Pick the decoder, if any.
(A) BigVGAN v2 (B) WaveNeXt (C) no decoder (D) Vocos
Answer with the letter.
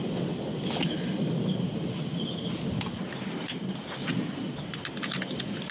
C